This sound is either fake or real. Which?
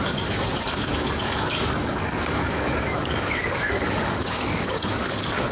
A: fake